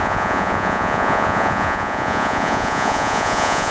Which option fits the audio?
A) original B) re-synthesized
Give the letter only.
B